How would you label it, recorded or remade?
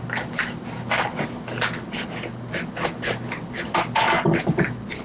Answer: recorded